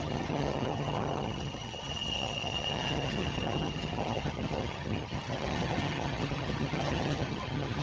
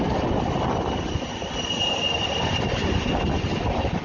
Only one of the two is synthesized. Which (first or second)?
first